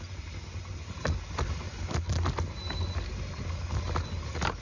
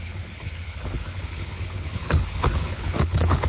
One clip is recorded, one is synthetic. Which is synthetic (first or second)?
second